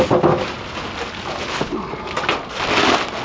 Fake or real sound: real